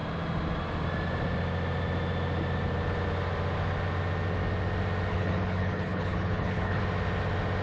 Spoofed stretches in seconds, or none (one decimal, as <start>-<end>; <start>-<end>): 5.1-6.8